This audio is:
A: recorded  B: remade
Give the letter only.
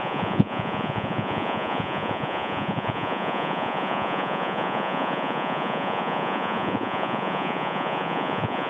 B